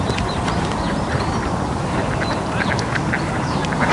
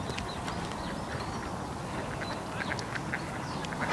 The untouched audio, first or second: second